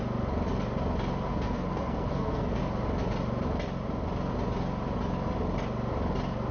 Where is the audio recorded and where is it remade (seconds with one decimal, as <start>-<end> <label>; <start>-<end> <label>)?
0.0-1.3 recorded; 1.3-2.6 remade; 2.6-6.5 recorded